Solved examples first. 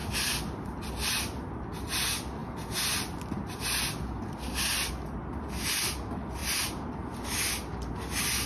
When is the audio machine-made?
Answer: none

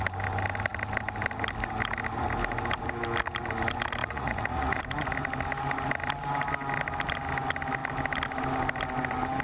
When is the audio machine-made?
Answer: 4.0-4.8 (vocoder, Vocos)

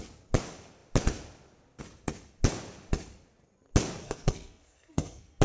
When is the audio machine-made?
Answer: 4.0-5.4 (codec, SNAC)